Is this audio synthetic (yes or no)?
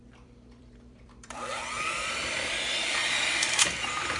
yes